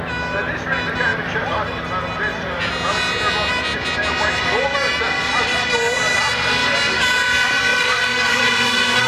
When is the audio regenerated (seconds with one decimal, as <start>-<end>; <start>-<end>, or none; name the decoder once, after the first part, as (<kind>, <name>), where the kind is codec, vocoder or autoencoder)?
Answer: 7.7-8.4 (codec, DAC)